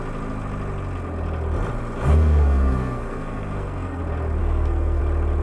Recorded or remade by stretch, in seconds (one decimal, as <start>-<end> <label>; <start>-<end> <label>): 0.0-2.1 recorded; 2.1-4.0 remade; 4.0-4.4 recorded; 4.4-5.0 remade; 5.0-5.4 recorded